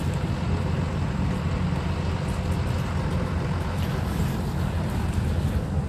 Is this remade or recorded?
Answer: recorded